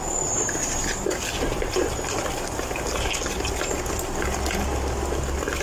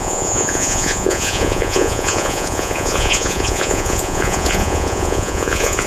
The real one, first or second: first